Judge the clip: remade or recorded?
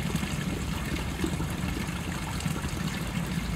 recorded